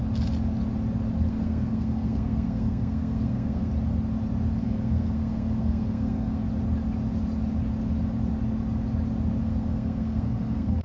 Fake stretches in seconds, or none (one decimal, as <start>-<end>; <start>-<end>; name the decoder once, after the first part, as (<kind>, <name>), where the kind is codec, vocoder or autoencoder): 1.3-3.7 (codec, SNAC); 4.6-6.4; 9.4-10.8